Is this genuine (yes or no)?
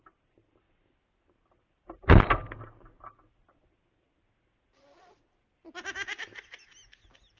yes